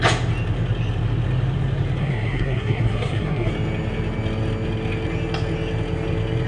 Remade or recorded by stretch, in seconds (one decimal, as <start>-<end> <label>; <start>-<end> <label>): 0.0-2.0 recorded; 2.0-3.5 remade; 3.5-6.5 recorded